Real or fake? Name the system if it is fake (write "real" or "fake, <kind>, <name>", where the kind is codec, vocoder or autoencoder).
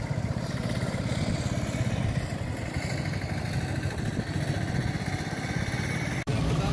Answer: real